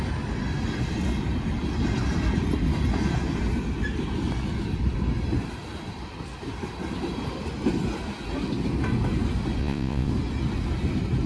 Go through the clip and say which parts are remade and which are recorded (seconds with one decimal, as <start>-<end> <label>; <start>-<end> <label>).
0.0-9.6 recorded; 9.6-10.1 remade; 10.1-11.3 recorded